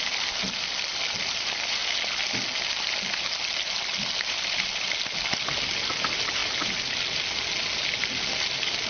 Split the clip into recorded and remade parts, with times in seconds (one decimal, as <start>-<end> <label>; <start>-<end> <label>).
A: 0.0-8.9 recorded